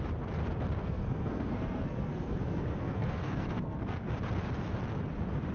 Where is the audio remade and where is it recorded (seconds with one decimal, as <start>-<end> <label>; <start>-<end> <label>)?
0.0-0.8 recorded; 0.8-4.1 remade; 4.1-5.5 recorded